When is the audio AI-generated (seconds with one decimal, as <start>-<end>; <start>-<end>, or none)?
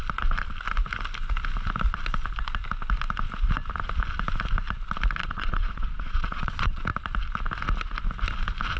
5.2-6.8